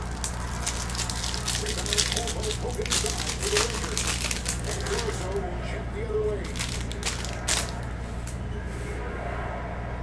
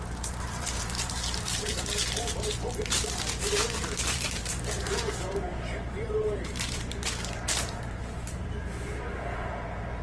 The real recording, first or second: first